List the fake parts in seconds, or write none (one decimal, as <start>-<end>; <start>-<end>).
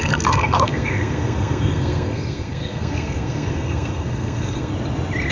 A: 0.0-4.7